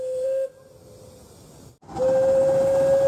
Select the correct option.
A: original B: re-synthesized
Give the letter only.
A